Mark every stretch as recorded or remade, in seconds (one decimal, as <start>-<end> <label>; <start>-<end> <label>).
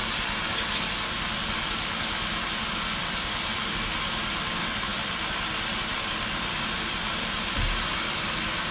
0.0-8.7 recorded